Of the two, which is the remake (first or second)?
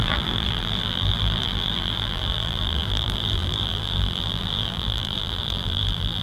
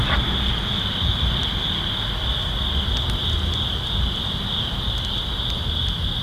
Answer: first